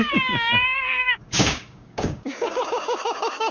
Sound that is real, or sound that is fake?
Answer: fake